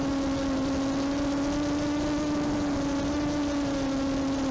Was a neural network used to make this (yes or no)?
no